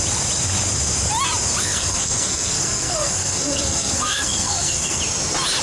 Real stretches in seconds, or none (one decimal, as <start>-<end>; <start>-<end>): 0.0-1.6; 5.0-5.6

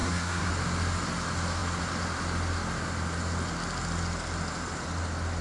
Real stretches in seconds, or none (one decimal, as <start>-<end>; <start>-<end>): 0.5-5.4

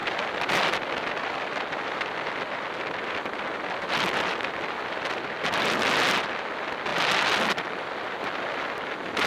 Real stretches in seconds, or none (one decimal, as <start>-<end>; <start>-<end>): 0.0-9.3

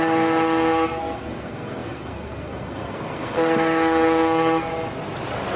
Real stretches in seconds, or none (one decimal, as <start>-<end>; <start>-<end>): 4.7-5.6